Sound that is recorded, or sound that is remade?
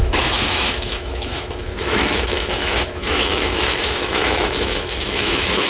remade